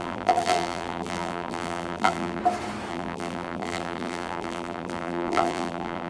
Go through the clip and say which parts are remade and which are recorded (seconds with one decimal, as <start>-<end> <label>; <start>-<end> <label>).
0.0-2.4 remade; 2.4-2.9 recorded; 2.9-6.1 remade